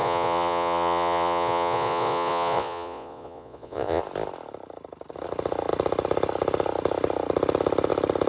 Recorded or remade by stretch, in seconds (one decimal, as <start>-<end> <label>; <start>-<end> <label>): 0.0-4.0 remade; 4.0-8.3 recorded